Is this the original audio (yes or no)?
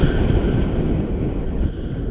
yes